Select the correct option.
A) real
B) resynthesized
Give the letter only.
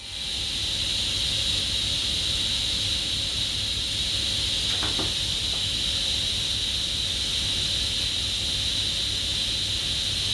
A